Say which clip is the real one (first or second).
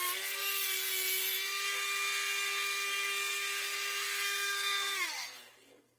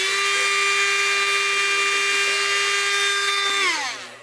second